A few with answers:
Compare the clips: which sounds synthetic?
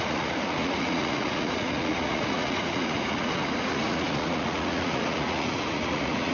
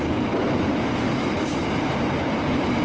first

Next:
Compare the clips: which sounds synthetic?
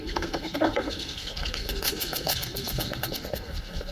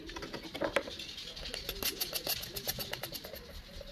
first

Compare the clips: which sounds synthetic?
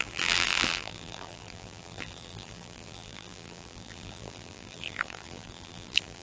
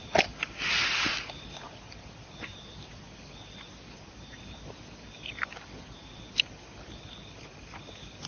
first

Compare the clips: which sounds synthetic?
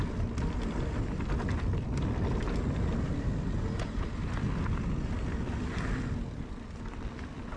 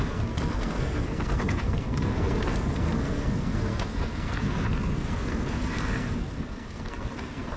second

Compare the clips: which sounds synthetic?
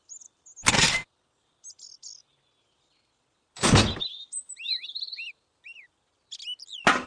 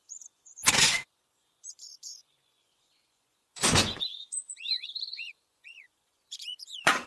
second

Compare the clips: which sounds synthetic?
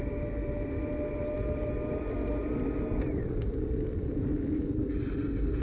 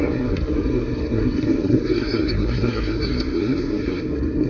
second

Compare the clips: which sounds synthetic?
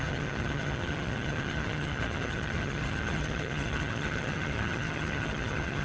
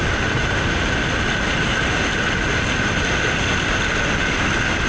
first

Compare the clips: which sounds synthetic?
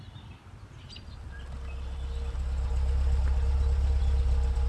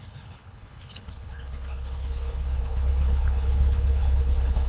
second